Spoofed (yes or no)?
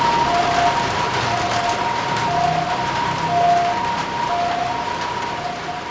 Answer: no